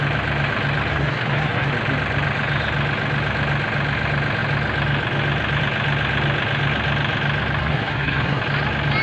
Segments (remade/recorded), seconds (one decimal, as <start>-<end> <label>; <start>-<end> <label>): 0.0-0.9 recorded; 0.9-1.7 remade; 1.7-7.6 recorded; 7.6-8.4 remade; 8.4-9.0 recorded